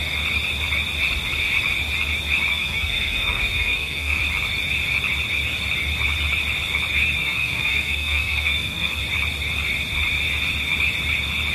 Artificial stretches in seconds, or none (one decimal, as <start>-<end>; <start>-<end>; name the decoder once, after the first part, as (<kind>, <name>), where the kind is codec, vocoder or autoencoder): 2.5-4.2 (codec, SNAC); 7.2-9.0